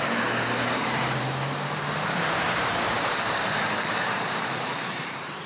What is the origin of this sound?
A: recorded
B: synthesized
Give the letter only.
B